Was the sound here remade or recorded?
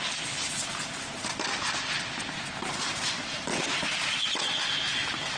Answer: recorded